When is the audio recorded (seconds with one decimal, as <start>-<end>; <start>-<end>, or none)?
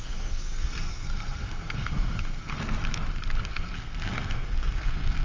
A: 2.8-3.5